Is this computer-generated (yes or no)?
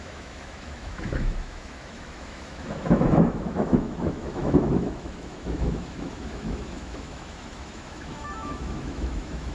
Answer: yes